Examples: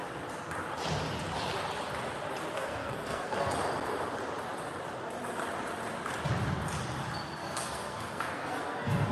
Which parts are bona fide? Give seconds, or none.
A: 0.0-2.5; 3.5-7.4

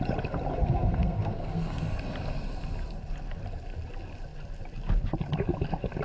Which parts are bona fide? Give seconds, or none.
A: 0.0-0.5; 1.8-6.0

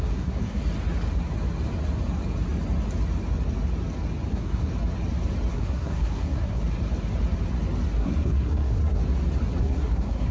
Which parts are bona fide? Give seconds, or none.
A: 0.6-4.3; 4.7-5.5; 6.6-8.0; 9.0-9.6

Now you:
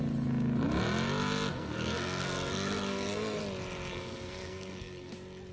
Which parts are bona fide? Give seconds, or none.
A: 0.0-1.5; 3.4-3.9; 5.1-5.5